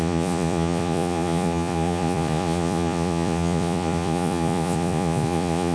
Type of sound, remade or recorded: remade